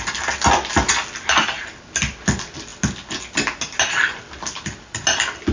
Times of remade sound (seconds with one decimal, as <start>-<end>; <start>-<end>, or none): none